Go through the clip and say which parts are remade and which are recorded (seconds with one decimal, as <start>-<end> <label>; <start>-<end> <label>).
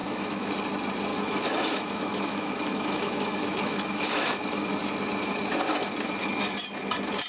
0.0-0.5 remade; 0.5-1.1 recorded; 1.1-4.4 remade; 4.4-7.3 recorded